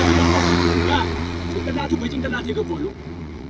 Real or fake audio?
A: fake